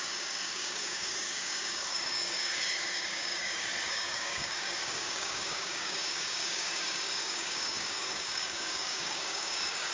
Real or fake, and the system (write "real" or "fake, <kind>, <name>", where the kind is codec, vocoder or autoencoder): fake, codec, DAC